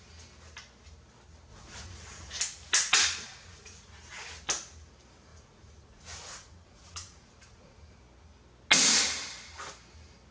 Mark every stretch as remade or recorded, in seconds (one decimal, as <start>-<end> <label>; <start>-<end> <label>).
0.0-1.5 recorded; 1.5-2.4 remade; 2.4-2.8 recorded; 2.8-4.0 remade; 4.0-5.3 recorded; 5.3-8.0 remade; 8.0-10.3 recorded